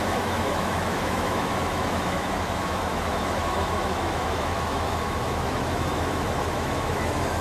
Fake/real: fake